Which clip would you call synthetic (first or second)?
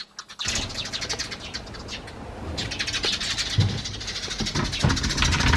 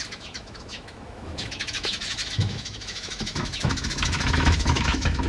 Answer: second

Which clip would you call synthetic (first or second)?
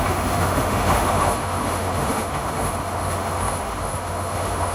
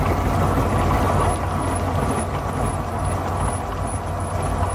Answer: first